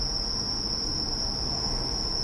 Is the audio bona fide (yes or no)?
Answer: yes